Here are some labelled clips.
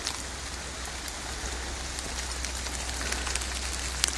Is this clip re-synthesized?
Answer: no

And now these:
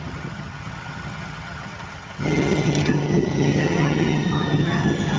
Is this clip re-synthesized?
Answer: yes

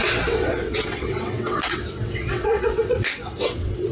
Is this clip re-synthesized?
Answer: yes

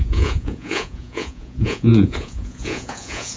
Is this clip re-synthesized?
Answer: yes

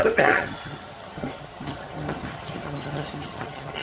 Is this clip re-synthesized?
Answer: yes